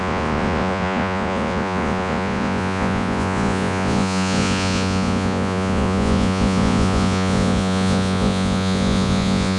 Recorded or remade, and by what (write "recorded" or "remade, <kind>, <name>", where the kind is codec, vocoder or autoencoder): remade, vocoder, Vocos